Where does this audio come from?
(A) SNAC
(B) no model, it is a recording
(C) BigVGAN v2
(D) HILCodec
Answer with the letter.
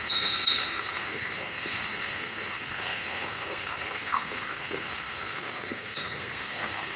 A